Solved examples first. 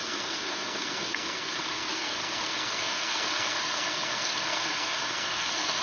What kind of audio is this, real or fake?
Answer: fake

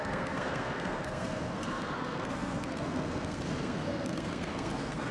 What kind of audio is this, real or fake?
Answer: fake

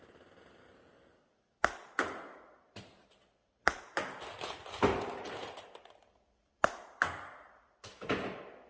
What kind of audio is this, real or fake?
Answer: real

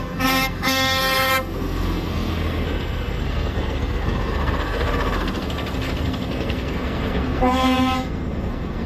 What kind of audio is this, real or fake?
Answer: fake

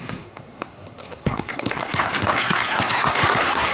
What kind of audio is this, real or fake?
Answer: fake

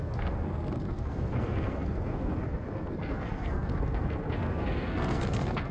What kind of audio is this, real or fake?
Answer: fake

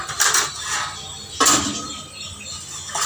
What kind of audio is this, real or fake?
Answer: real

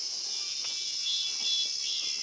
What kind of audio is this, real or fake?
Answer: real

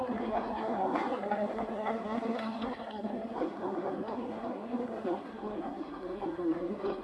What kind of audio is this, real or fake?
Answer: fake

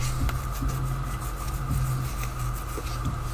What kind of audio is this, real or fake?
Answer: real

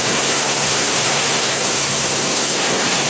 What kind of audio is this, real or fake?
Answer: fake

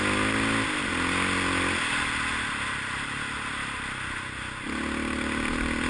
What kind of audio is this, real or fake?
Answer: real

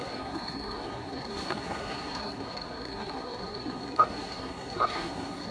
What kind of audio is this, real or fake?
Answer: fake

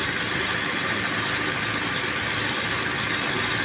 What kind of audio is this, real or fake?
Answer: real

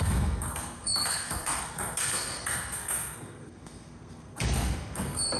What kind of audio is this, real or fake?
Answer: fake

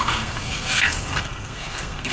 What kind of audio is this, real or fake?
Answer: fake